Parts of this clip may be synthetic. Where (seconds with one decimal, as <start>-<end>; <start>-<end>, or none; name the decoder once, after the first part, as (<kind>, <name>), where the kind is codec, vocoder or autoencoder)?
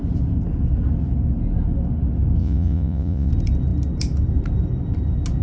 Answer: 2.4-3.3 (vocoder, Vocos)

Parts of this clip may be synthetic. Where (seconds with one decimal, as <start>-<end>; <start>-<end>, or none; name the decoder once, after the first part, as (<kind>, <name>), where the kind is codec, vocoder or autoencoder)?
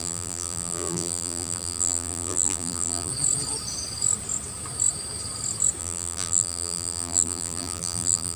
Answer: 0.0-3.1 (vocoder, BigVGAN v2); 5.8-8.4